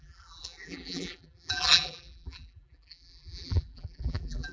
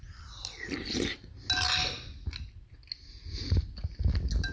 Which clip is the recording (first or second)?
second